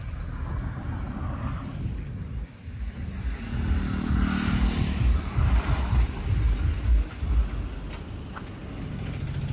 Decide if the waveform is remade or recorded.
recorded